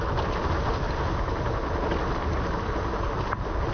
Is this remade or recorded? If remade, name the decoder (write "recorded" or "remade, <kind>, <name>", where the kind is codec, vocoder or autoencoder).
recorded